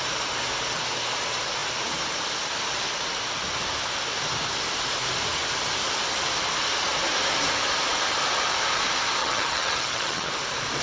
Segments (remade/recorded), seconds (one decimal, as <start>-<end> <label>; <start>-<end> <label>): 0.0-9.2 recorded; 9.2-10.3 remade; 10.3-10.8 recorded